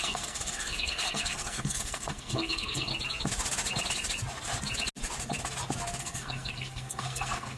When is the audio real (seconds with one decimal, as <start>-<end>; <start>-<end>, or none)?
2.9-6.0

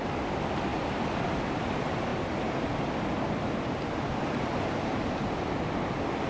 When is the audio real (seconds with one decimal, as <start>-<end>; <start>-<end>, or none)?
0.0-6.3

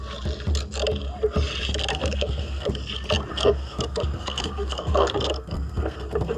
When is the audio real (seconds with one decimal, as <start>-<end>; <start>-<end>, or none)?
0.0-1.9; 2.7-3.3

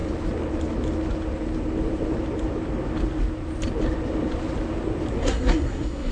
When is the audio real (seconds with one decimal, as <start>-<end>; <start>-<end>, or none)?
0.0-5.2

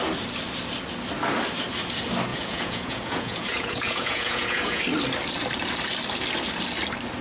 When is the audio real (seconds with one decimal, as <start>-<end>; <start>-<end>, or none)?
0.0-2.3; 4.8-7.2

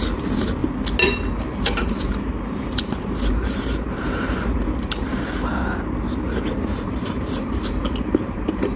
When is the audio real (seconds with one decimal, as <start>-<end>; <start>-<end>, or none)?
0.6-1.4; 5.1-6.9

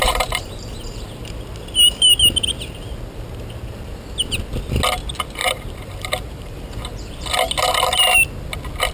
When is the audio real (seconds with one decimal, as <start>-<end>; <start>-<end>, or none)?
1.2-5.4; 6.6-8.9

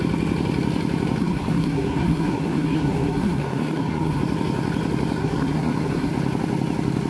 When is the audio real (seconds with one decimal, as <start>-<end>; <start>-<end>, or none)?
0.0-1.2; 4.2-5.2; 6.1-7.1